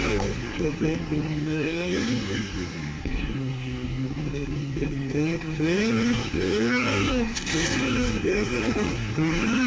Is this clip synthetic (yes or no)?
yes